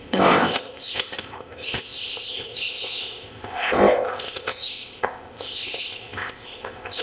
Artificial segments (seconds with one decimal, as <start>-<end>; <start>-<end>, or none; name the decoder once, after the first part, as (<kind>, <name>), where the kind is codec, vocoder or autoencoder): 0.0-7.0 (codec, ZipCodec)